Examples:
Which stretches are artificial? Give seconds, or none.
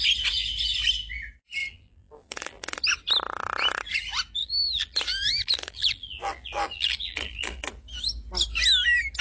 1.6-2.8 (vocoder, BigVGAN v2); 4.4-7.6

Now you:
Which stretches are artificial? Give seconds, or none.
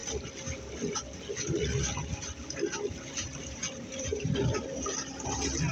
3.9-4.6 (vocoder, BigVGAN v2)